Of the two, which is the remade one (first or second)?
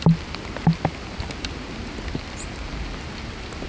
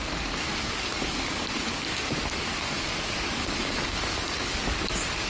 second